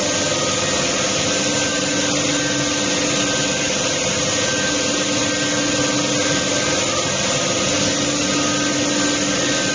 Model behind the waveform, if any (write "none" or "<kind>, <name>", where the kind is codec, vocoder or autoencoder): none